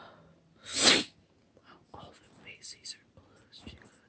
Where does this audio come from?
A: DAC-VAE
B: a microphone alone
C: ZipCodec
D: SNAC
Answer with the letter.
B